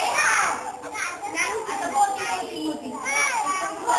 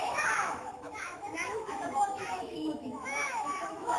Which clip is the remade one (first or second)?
second